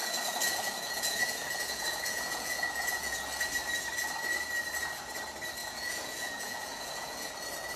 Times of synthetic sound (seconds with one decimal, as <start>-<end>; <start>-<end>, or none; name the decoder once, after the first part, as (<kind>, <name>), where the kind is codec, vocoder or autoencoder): 0.0-3.2 (vocoder, Vocos); 5.6-7.3